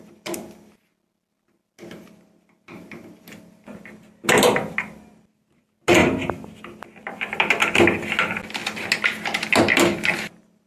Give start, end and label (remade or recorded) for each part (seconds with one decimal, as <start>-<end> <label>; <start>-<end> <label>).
0.0-10.7 recorded